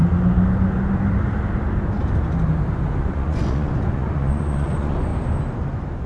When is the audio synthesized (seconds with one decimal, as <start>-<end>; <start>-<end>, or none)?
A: 3.0-5.1